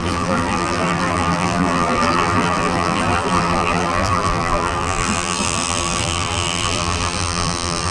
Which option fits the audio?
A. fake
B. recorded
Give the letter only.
A